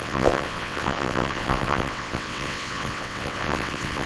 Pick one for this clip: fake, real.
fake